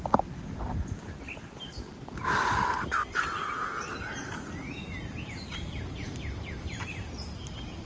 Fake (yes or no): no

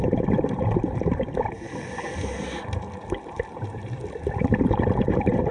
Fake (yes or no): yes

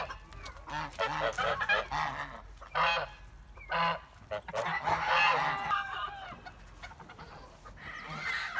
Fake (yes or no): no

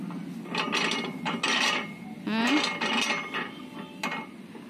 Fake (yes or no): no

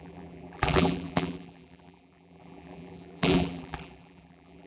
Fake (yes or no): yes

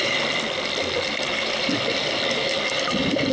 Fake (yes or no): yes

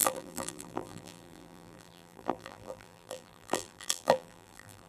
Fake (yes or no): yes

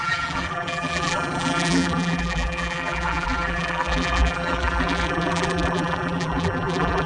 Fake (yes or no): yes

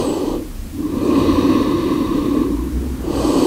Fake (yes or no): yes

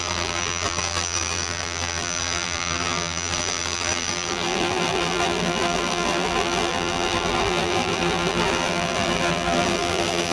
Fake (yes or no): yes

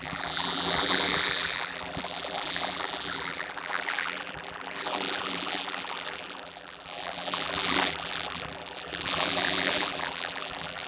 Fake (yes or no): yes